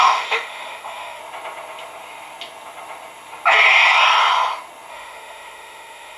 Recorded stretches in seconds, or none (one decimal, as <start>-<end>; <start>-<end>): 1.2-4.9